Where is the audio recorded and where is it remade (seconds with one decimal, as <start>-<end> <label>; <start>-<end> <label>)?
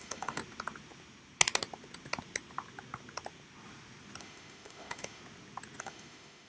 0.0-0.4 remade; 0.4-4.2 recorded; 4.2-5.2 remade; 5.2-5.8 recorded; 5.8-6.5 remade